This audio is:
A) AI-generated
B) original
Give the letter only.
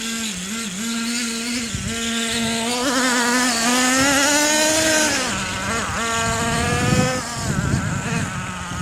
B